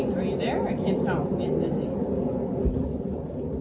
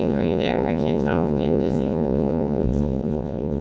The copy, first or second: second